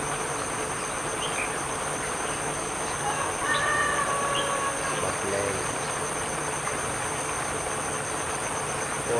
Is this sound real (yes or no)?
yes